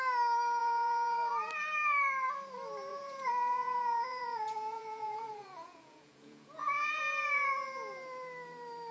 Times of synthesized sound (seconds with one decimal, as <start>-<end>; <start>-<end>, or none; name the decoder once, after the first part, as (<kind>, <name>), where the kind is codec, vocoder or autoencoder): 0.6-1.3 (vocoder, Vocos); 2.9-7.0